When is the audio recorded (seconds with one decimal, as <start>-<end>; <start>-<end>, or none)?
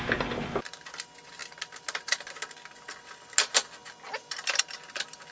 0.0-5.3